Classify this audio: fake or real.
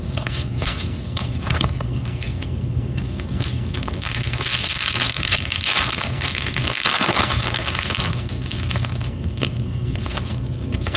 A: fake